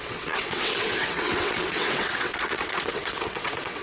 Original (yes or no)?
no